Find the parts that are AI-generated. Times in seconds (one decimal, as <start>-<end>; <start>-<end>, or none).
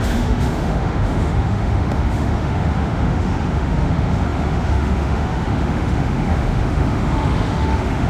0.0-8.1